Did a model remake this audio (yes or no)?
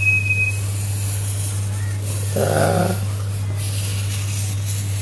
no